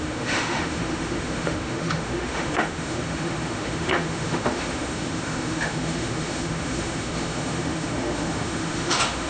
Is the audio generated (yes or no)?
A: yes